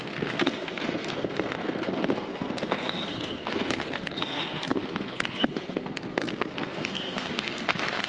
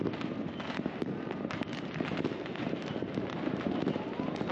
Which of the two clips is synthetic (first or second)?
first